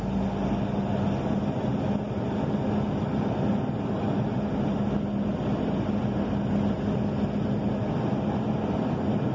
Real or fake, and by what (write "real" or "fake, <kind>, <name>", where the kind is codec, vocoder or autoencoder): real